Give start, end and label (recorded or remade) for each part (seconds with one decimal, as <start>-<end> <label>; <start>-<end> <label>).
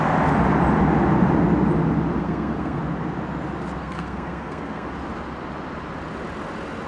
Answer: 0.0-2.2 recorded; 2.2-2.8 remade; 2.8-3.8 recorded; 3.8-4.9 remade; 4.9-6.9 recorded